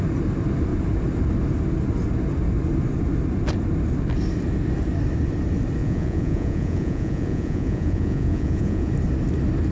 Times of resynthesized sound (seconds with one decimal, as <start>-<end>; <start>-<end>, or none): 5.8-8.9